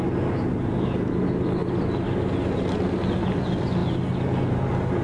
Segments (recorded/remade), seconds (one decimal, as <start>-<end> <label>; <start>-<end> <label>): 0.0-5.0 recorded